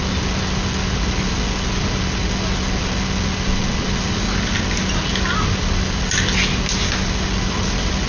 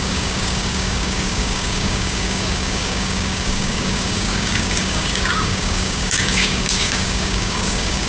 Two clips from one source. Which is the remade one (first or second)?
second